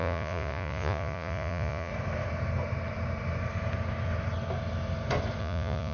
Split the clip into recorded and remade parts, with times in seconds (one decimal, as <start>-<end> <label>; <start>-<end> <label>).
0.0-1.9 remade; 1.9-5.4 recorded; 5.4-5.9 remade